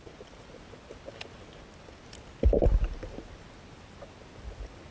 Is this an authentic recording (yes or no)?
yes